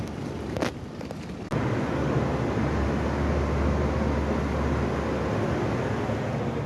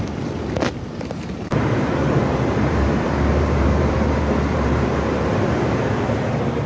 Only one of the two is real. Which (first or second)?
first